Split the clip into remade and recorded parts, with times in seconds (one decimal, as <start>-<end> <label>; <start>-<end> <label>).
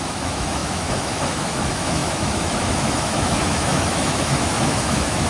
0.0-5.3 remade